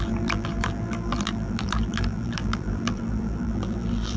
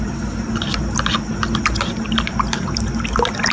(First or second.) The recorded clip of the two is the second